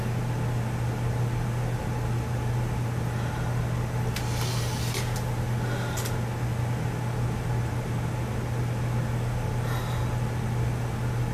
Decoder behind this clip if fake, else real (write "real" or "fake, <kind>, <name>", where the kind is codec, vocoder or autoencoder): real